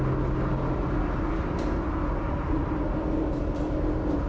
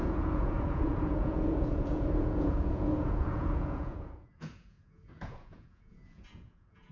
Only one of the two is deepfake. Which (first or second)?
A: second